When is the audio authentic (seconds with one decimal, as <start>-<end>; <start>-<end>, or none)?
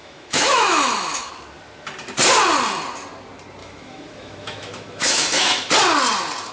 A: 1.3-3.6; 5.7-6.5